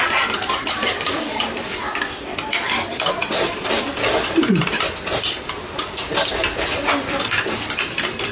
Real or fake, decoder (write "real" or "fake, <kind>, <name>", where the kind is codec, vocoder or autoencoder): fake, vocoder, BigVGAN v2